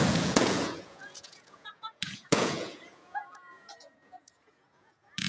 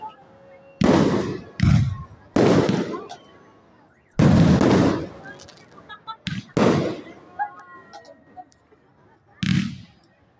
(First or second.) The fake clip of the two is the first